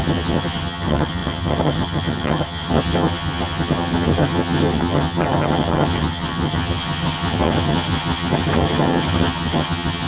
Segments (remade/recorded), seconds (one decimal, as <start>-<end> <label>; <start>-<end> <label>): 0.0-10.1 remade